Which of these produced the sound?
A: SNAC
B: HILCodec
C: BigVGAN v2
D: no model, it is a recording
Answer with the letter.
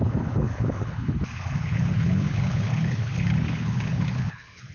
B